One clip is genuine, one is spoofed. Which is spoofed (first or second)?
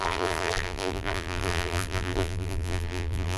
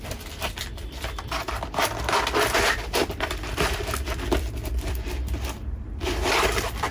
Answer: first